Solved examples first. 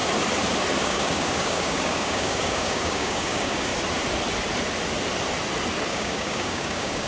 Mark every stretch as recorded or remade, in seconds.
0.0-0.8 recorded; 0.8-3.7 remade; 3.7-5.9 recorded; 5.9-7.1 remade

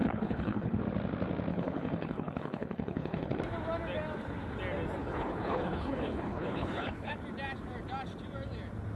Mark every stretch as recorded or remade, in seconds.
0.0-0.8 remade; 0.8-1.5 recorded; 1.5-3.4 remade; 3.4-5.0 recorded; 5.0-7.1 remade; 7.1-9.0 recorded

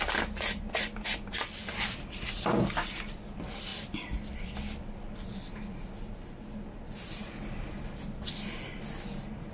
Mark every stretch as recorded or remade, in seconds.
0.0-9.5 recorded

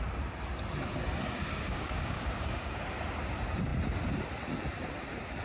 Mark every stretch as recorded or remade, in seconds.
0.0-1.4 recorded; 1.4-2.8 remade; 2.8-5.4 recorded